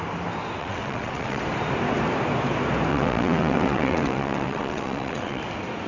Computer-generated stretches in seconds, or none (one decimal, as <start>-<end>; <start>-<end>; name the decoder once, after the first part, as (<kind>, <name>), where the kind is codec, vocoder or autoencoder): 0.6-1.4 (vocoder, WaveNeXt); 2.9-5.4